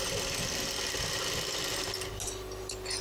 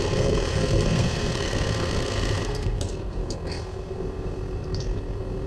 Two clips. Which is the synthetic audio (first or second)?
second